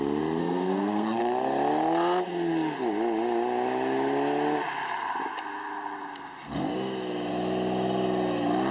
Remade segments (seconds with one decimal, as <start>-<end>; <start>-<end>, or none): 0.4-1.2